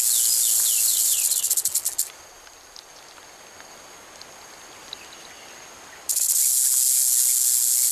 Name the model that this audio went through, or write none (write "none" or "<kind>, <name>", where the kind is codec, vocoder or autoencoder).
none